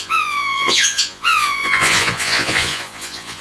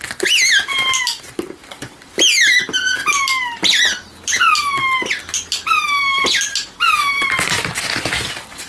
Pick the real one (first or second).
second